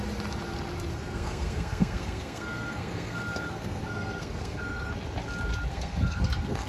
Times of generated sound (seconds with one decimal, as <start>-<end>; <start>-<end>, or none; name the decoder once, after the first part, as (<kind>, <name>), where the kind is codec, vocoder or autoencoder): 0.9-4.9 (codec, SNAC); 5.7-6.7